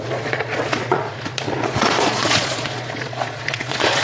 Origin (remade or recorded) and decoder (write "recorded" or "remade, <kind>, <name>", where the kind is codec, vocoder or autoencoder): remade, vocoder, Vocos